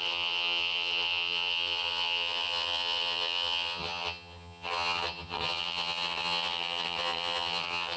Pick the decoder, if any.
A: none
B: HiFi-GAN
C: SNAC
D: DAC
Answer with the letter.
B